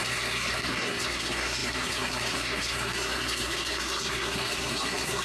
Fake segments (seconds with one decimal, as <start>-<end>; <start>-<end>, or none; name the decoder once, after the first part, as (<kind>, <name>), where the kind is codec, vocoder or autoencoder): 0.0-5.2 (codec, SNAC)